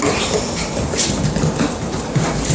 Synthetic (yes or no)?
no